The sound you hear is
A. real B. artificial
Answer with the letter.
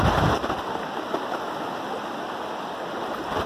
A